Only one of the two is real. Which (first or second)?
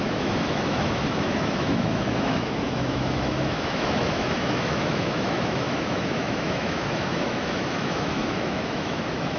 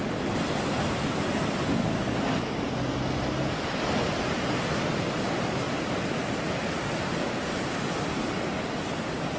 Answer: second